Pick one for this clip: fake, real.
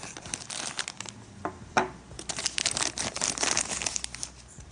real